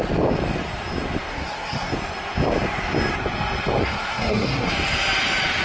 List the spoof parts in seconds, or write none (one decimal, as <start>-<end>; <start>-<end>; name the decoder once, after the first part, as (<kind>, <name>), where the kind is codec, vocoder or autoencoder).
1.3-1.9 (codec, SNAC); 3.8-4.7